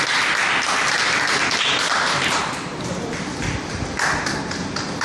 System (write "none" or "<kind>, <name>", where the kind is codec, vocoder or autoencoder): none